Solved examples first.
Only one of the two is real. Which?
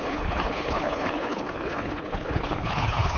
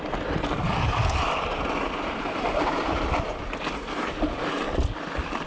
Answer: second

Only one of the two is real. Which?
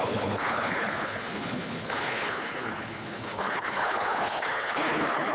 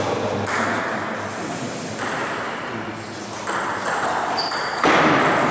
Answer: second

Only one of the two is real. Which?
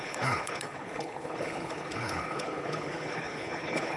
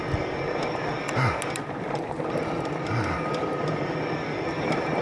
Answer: second